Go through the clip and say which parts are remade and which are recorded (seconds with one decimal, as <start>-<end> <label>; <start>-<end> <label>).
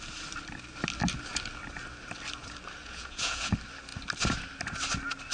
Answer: 0.0-2.8 recorded; 2.8-3.5 remade; 3.5-5.3 recorded